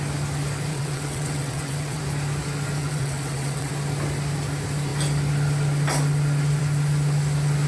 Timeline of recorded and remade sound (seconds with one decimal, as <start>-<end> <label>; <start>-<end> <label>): 0.0-0.7 recorded; 0.7-2.0 remade; 2.0-2.8 recorded; 2.8-3.7 remade; 3.7-7.7 recorded